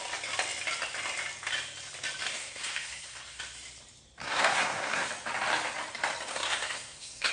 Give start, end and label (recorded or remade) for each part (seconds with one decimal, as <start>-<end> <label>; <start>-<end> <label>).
0.0-2.4 recorded; 2.4-3.4 remade; 3.4-4.2 recorded; 4.2-5.1 remade; 5.1-6.3 recorded; 6.3-7.3 remade